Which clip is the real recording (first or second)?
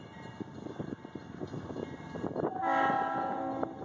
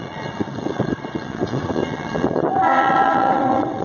first